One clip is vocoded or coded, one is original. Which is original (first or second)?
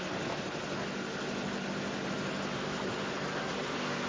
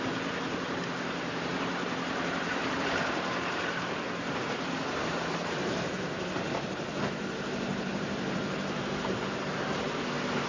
first